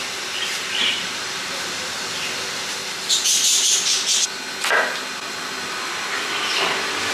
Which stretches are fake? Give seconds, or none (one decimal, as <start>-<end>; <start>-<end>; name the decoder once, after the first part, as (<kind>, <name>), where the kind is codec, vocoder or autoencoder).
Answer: 0.0-2.8 (vocoder, BigVGAN v2)